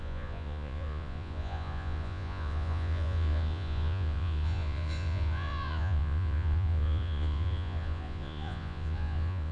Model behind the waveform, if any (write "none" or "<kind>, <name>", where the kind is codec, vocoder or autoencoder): vocoder, Vocos